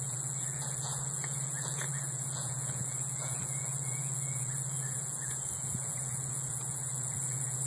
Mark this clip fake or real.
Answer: fake